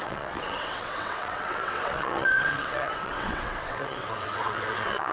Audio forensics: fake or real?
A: fake